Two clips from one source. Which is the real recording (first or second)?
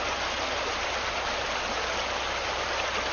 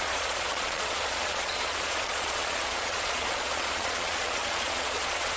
first